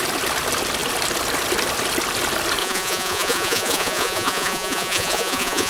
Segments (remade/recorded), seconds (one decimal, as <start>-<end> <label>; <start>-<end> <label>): 0.0-2.6 recorded; 2.6-5.7 remade